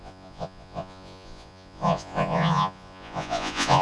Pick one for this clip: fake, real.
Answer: fake